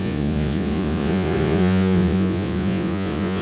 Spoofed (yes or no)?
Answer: yes